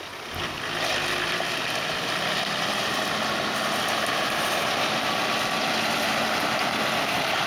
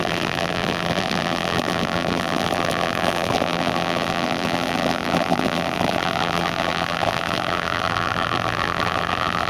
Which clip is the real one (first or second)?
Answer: first